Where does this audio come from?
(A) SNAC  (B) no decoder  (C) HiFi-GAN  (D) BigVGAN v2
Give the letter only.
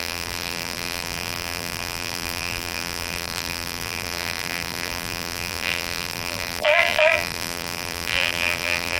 D